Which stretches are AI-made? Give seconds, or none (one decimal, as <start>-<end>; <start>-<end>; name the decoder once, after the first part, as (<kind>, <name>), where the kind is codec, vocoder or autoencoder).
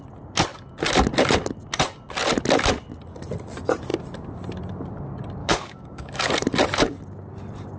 5.4-6.3 (codec, DAC)